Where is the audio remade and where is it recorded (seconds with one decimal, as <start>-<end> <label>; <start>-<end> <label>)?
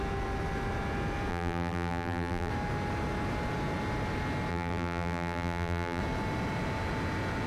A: 0.0-1.3 recorded; 1.3-2.5 remade; 2.5-4.5 recorded; 4.5-6.0 remade; 6.0-7.5 recorded